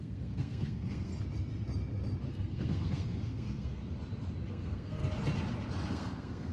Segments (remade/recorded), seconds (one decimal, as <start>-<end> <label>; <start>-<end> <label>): 0.0-1.1 remade; 1.1-2.3 recorded; 2.3-3.8 remade; 3.8-4.5 recorded; 4.5-5.0 remade; 5.0-5.9 recorded; 5.9-6.5 remade